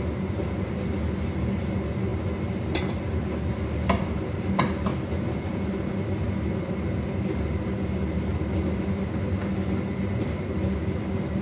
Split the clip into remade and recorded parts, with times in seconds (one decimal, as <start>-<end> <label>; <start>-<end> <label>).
0.0-11.4 recorded